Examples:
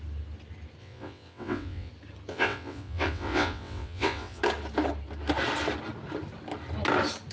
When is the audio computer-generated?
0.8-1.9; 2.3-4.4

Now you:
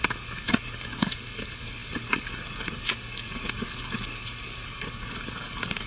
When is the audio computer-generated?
0.0-5.9